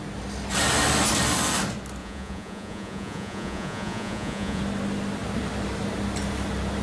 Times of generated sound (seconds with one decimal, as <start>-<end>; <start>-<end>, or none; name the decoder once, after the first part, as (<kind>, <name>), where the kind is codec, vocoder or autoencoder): 2.0-4.6 (vocoder, Vocos)